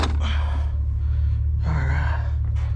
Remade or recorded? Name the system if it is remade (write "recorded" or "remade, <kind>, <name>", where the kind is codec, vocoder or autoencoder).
recorded